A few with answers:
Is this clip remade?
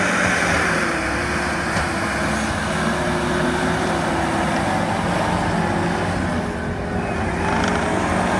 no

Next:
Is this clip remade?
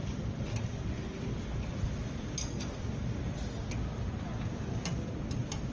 no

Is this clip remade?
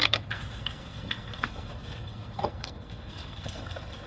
yes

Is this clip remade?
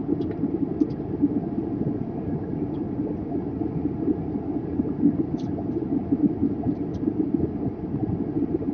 no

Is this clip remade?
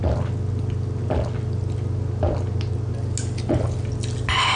no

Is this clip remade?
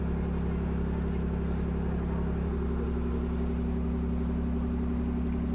no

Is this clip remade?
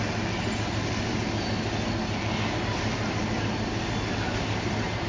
no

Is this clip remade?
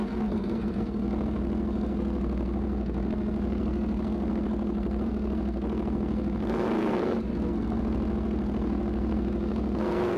yes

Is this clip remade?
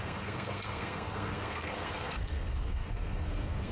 yes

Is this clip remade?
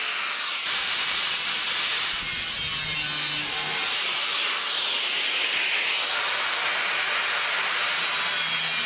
no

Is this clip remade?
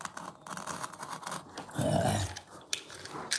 no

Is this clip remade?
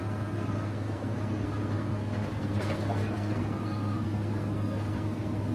yes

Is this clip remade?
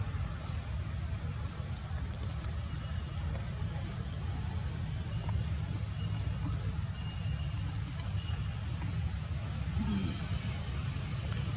no